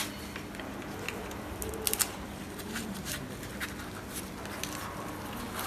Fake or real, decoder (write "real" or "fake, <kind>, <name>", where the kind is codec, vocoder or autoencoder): real